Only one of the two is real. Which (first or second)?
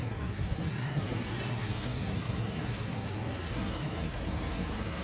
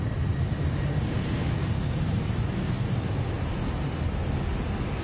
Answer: second